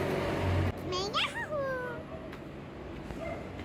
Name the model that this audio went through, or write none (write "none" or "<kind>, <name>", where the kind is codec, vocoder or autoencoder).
none